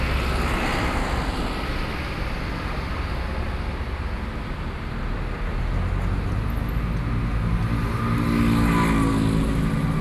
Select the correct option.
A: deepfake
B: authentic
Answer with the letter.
B